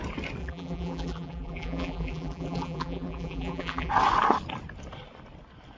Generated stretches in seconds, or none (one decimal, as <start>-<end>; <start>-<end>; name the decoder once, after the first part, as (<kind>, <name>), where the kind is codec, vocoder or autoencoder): 0.4-3.9 (vocoder, BigVGAN v2)